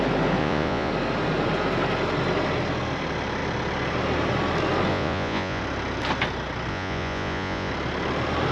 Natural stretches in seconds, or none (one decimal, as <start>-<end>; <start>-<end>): 0.0-0.4; 0.9-4.9; 5.6-6.7; 7.7-8.5